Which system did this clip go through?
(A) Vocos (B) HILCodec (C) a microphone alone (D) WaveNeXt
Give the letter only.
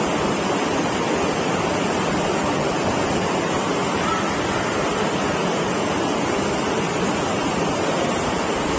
C